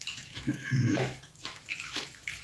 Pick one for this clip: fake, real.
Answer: fake